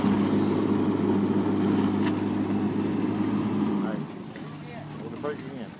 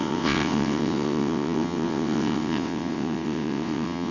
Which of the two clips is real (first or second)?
first